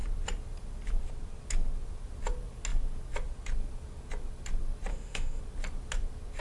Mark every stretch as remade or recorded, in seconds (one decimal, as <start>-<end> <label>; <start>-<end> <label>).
0.0-4.9 recorded; 4.9-5.4 remade; 5.4-6.4 recorded